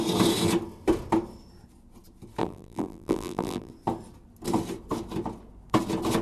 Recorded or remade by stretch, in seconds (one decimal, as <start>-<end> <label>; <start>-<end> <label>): 0.0-2.4 recorded; 2.4-3.7 remade; 3.7-6.2 recorded